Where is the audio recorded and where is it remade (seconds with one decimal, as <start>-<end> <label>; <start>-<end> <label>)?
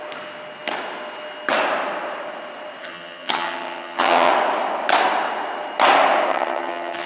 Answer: 0.0-2.8 recorded; 2.8-4.3 remade; 4.3-6.3 recorded; 6.3-7.1 remade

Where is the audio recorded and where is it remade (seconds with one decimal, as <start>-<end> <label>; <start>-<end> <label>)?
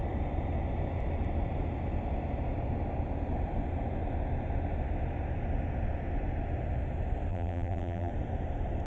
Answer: 0.0-7.3 recorded; 7.3-8.1 remade; 8.1-8.9 recorded